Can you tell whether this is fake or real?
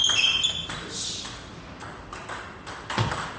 real